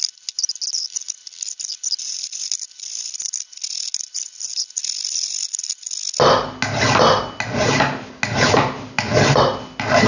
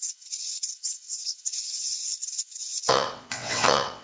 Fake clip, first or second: second